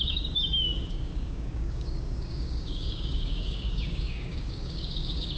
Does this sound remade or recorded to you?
remade